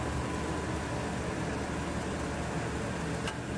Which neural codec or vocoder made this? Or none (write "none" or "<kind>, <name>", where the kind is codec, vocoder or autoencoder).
none